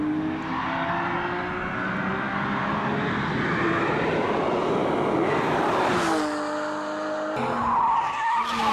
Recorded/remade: recorded